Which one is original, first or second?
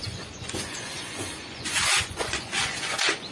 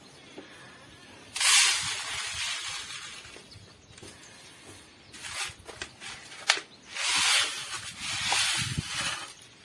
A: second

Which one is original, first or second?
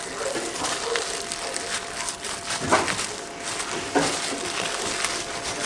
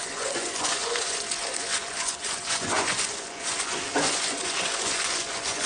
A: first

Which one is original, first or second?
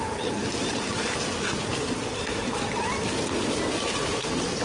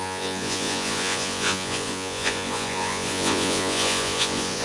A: first